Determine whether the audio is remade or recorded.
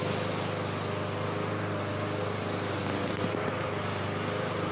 recorded